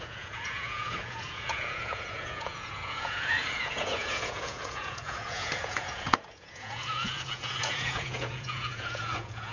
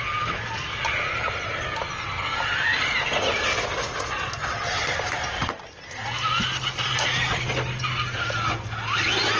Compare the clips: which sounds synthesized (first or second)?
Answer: first